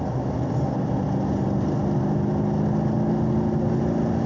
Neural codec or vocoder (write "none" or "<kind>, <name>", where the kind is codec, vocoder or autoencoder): none